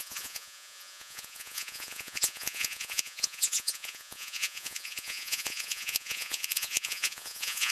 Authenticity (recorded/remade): remade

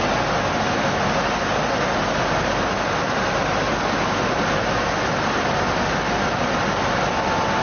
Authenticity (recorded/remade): recorded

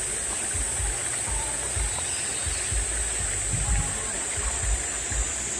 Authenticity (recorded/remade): recorded